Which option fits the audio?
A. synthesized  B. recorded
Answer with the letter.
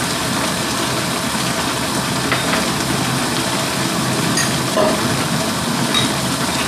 B